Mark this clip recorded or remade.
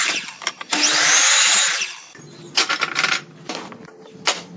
recorded